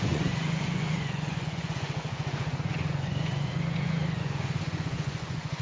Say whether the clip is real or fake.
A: fake